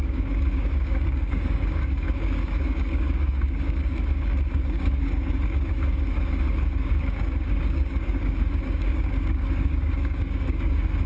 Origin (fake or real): fake